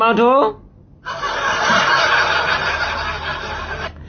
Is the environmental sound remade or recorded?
recorded